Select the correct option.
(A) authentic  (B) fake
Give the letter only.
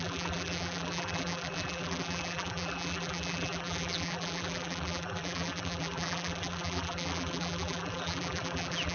B